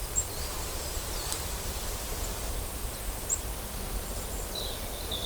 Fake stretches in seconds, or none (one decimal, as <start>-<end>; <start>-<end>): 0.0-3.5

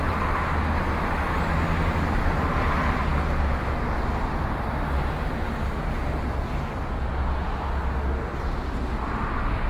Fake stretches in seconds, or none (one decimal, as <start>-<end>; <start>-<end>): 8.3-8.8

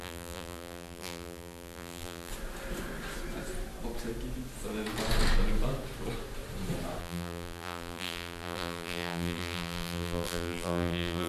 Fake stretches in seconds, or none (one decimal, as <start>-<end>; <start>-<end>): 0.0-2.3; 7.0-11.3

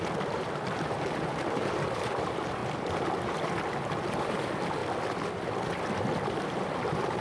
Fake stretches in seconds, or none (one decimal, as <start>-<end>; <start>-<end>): 0.0-2.6; 3.9-4.8; 6.3-7.2

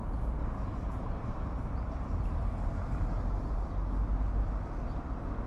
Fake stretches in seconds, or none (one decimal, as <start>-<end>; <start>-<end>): 0.4-3.7